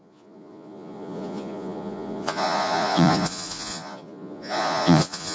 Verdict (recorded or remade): remade